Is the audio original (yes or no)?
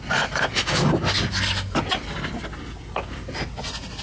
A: yes